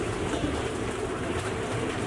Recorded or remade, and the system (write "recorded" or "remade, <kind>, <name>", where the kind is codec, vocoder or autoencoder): remade, vocoder, BigVGAN v2